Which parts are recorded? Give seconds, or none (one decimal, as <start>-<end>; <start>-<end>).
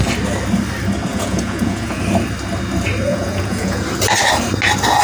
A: 0.0-1.1; 2.0-3.1; 3.8-5.0